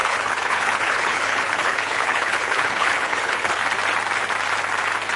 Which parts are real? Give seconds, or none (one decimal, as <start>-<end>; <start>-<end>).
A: 3.6-5.2